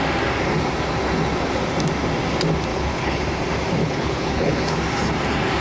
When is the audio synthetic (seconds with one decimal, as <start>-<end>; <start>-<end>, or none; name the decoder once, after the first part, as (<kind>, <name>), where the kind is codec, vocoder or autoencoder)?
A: 2.7-3.2 (codec, HILCodec); 3.8-4.8

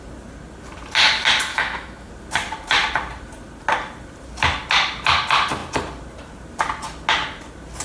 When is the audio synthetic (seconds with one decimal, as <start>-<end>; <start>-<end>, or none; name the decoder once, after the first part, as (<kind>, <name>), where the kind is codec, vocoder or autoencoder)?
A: 1.5-2.1 (autoencoder, DAC-VAE)

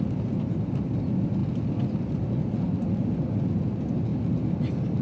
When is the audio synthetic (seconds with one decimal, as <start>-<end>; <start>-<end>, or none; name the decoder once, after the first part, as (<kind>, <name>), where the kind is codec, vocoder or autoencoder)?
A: none

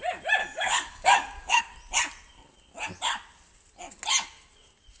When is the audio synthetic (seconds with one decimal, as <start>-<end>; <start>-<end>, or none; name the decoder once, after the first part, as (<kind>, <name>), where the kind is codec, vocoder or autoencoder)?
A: 0.4-1.6 (codec, DAC)